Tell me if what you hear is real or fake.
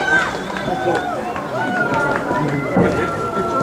fake